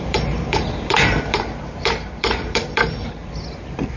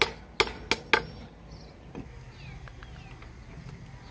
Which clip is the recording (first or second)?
second